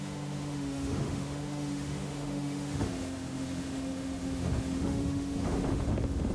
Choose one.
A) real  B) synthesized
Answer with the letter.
B